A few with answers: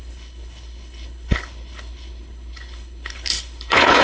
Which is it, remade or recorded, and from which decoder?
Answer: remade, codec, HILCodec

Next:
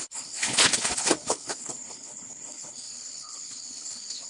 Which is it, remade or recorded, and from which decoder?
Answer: remade, codec, HILCodec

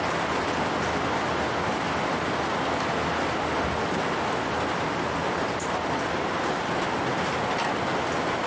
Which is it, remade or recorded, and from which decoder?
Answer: recorded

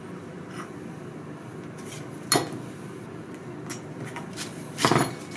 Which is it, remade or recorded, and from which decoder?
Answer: recorded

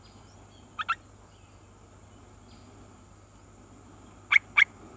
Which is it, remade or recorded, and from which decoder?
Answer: recorded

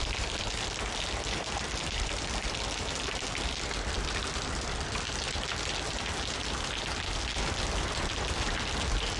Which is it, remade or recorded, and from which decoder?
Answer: recorded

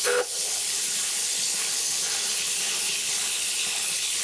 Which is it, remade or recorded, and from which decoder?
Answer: remade, codec, HILCodec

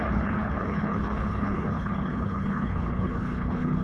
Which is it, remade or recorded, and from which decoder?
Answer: remade, codec, HILCodec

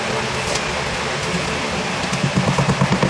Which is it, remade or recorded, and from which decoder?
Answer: recorded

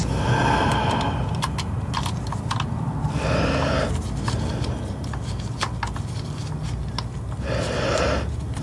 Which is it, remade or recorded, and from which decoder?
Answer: recorded